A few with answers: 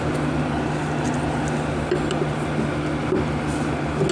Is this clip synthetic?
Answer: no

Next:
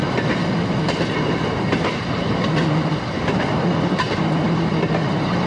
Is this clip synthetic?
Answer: no